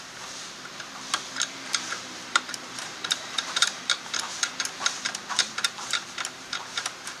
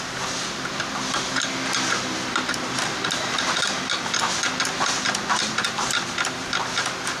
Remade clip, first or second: first